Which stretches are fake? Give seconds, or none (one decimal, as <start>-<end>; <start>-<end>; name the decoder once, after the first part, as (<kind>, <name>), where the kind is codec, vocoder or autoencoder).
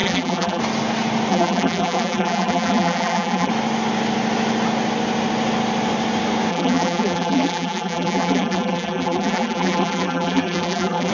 0.0-0.6 (vocoder, BigVGAN v2); 1.3-3.5; 6.5-11.1